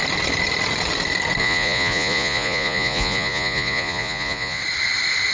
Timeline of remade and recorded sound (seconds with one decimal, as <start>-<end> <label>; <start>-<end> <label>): 0.0-1.4 recorded; 1.4-4.6 remade; 4.6-5.3 recorded